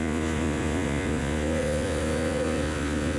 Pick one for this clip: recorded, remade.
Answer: remade